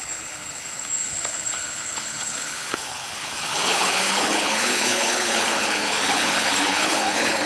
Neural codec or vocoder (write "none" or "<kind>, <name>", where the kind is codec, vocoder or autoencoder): codec, HILCodec